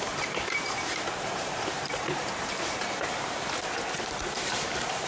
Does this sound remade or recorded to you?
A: remade